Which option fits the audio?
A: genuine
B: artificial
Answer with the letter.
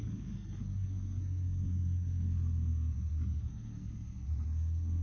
B